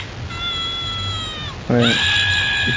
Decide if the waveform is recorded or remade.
recorded